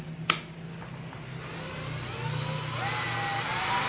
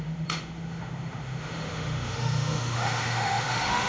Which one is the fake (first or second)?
second